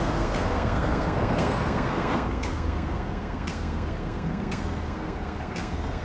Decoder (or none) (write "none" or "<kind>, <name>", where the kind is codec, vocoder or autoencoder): codec, SNAC